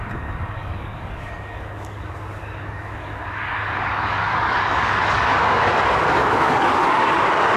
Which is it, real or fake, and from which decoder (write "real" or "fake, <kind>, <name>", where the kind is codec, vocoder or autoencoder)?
fake, codec, DAC